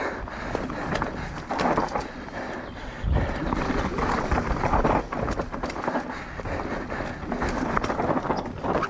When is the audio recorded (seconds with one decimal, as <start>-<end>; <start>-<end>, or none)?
0.0-8.9